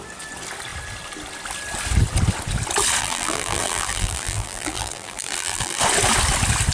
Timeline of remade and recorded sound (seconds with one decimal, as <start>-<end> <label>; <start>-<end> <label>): 0.0-3.0 recorded; 3.0-5.8 remade; 5.8-6.7 recorded